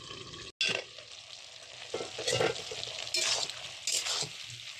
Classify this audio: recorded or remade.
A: recorded